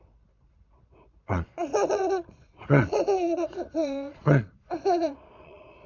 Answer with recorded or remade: remade